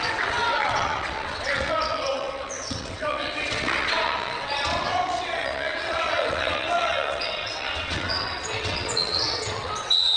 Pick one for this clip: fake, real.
fake